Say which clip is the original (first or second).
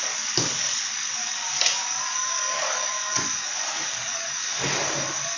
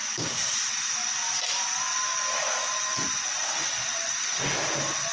second